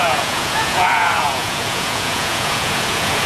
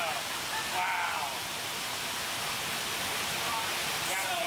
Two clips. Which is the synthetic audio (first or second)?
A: first